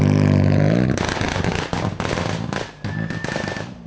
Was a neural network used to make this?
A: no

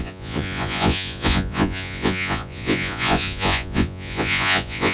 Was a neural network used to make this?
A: yes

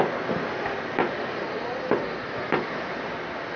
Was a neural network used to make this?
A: no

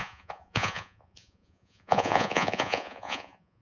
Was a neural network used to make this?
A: yes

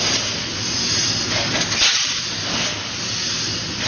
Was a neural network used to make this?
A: no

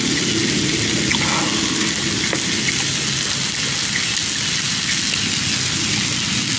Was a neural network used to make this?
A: no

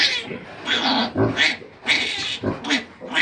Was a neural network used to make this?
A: no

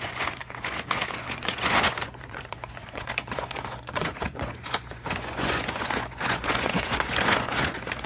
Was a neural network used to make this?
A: yes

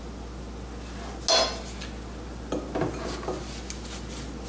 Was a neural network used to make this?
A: no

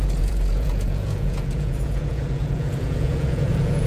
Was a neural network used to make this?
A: yes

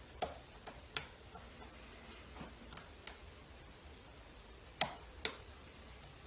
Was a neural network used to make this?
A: no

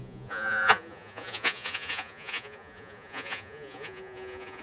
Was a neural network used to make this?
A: yes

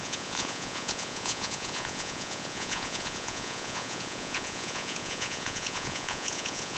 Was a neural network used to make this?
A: yes